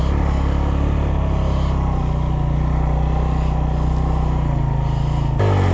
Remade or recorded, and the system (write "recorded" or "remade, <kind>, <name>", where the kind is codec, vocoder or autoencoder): recorded